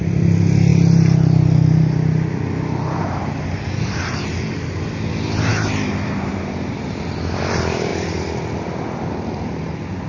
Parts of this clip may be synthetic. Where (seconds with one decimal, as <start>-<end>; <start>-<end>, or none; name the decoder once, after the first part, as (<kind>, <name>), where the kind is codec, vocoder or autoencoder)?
none